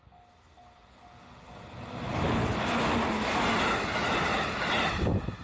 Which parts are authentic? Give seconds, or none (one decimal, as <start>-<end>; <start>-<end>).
0.0-5.4